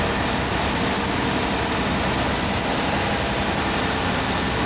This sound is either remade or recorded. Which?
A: recorded